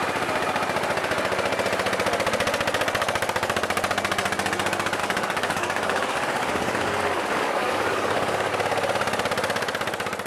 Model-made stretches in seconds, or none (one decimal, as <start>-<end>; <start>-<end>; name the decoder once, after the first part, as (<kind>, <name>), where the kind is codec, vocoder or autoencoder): 5.0-8.5 (codec, DAC)